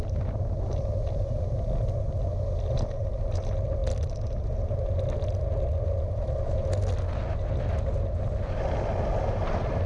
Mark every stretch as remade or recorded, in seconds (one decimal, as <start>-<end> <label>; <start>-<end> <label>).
0.0-9.9 recorded